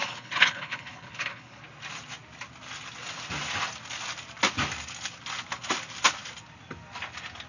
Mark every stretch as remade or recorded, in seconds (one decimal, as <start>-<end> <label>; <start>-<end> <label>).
0.0-1.6 remade; 1.6-7.5 recorded